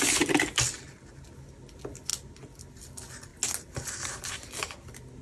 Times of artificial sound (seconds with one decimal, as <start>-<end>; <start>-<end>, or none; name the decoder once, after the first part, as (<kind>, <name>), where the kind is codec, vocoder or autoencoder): none